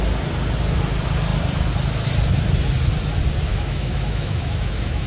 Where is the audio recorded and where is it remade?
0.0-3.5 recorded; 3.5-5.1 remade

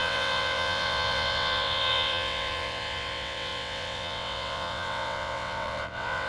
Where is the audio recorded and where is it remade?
0.0-6.3 remade

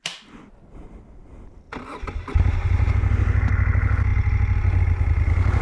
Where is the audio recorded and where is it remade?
0.0-5.6 recorded